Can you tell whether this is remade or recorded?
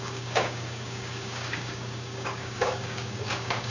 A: remade